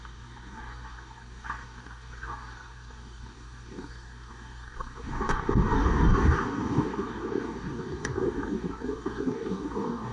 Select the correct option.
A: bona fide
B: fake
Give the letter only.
B